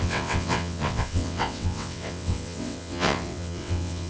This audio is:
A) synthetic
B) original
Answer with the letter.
A